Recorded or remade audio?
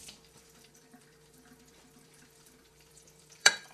remade